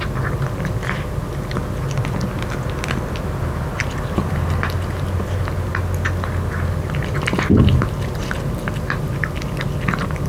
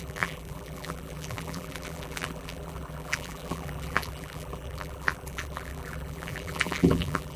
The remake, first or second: second